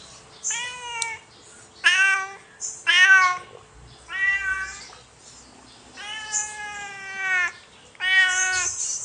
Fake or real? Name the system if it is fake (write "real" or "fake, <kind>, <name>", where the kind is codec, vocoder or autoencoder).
real